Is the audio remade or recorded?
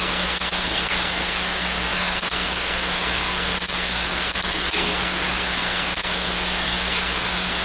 remade